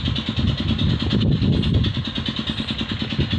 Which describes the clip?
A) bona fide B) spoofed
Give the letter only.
A